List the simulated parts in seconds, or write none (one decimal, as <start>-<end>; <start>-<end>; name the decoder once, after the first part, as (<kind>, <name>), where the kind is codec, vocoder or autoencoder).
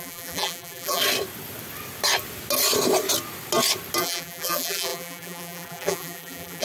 0.0-1.0 (vocoder, BigVGAN v2); 4.0-6.6